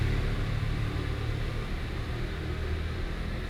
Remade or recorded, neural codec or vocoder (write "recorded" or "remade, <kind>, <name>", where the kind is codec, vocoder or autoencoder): recorded